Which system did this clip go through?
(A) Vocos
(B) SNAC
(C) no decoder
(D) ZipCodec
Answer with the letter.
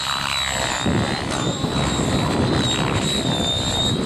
C